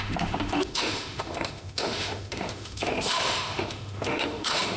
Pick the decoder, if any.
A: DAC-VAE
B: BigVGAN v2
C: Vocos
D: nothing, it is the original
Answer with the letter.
A